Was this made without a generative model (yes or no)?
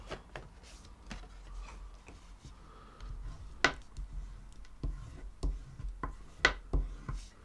yes